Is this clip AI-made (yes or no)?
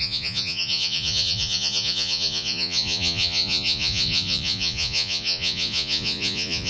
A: yes